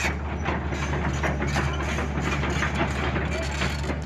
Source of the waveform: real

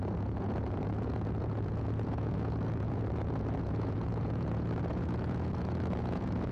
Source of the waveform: fake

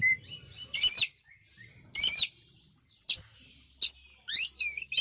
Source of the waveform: real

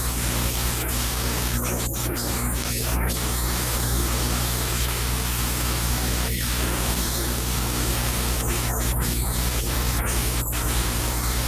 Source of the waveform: fake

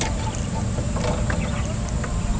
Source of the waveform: real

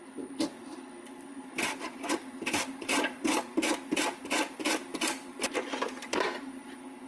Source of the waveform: fake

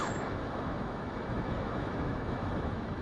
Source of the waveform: fake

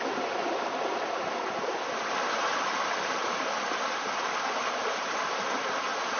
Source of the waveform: real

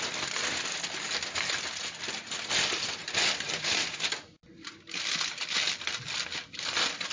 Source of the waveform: real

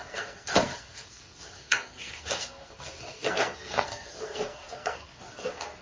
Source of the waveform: fake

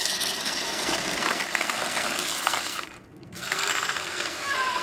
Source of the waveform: fake